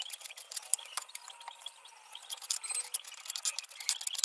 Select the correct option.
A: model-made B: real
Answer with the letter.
B